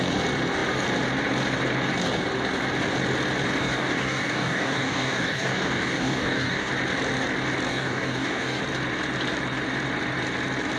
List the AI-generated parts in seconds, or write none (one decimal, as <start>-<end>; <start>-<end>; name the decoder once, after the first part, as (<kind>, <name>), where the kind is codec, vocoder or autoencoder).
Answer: 3.6-6.7 (codec, DAC); 7.7-8.6